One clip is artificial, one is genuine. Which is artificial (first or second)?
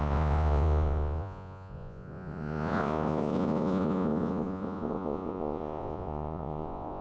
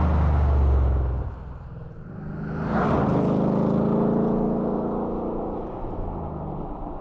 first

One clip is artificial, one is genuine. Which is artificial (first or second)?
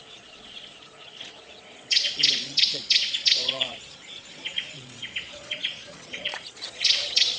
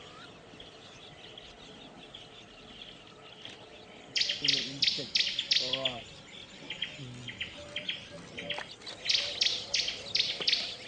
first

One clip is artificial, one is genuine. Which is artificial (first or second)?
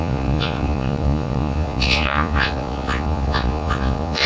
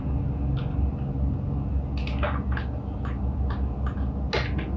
first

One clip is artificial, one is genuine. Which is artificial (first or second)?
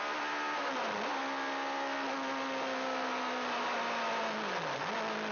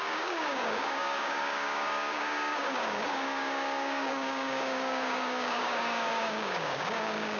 second